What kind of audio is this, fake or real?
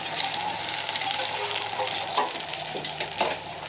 real